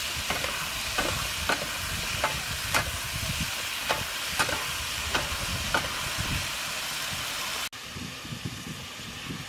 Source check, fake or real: real